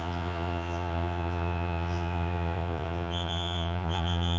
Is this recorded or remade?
remade